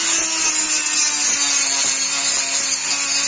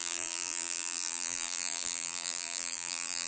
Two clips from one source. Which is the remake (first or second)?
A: second